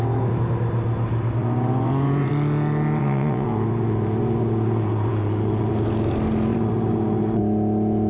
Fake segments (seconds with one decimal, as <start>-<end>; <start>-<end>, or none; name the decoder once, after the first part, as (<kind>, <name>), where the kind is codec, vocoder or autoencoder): 1.4-2.3 (vocoder, Vocos); 3.0-5.7; 6.5-7.4